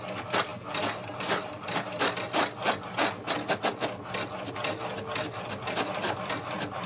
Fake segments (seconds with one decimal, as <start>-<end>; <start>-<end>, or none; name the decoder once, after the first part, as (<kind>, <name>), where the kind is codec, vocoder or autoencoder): none